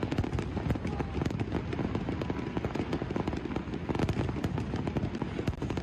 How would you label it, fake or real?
real